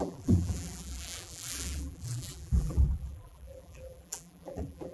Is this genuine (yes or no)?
no